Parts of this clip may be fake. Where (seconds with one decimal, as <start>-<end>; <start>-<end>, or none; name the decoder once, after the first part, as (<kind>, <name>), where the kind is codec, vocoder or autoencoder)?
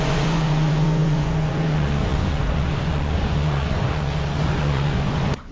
0.0-5.5 (vocoder, Vocos)